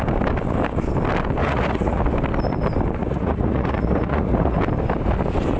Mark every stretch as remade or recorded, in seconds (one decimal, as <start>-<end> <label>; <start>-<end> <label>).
0.0-1.4 recorded; 1.4-2.0 remade; 2.0-3.0 recorded; 3.0-4.6 remade; 4.6-5.6 recorded